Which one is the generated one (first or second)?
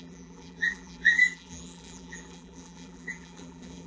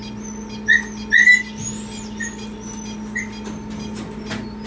first